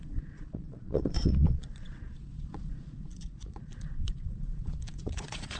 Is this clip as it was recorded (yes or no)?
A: no